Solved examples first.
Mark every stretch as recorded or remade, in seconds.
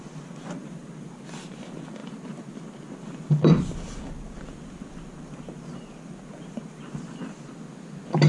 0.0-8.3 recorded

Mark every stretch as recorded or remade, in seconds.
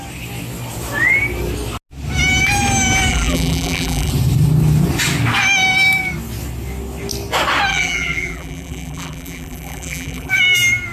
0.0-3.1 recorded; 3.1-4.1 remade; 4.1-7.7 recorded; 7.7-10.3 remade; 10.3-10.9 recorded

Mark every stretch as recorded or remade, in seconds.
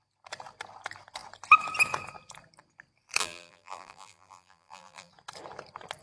0.0-3.2 recorded; 3.2-5.1 remade; 5.1-6.0 recorded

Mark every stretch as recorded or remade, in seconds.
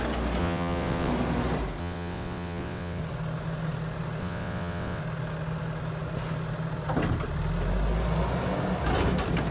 0.0-0.4 recorded; 0.4-1.1 remade; 1.1-1.8 recorded; 1.8-3.0 remade; 3.0-4.2 recorded; 4.2-5.0 remade; 5.0-9.5 recorded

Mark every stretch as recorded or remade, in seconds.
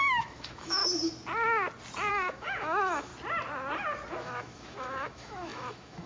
0.0-0.8 remade; 0.8-2.1 recorded; 2.1-3.1 remade; 3.1-4.1 recorded; 4.1-6.1 remade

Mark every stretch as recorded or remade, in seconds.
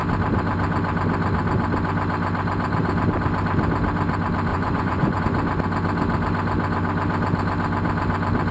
0.0-4.5 recorded; 4.5-5.2 remade; 5.2-8.5 recorded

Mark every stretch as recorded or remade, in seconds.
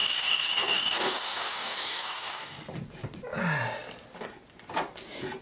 0.0-2.6 remade; 2.6-5.4 recorded